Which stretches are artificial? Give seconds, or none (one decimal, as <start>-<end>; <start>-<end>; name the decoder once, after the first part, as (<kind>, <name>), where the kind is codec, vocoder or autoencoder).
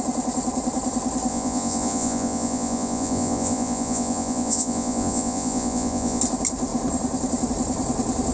1.3-6.2 (vocoder, Vocos)